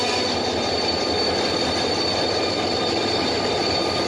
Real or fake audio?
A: real